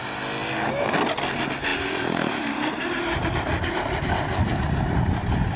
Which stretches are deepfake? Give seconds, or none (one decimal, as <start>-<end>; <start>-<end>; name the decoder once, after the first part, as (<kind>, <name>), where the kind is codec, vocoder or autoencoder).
none